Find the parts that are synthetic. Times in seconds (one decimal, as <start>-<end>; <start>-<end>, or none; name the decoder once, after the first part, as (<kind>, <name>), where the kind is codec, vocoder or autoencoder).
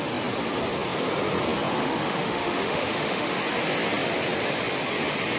1.8-3.4 (autoencoder, DAC-VAE)